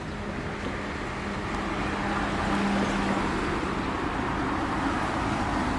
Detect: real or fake real